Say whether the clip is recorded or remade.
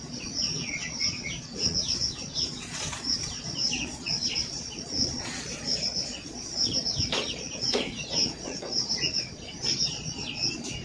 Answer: remade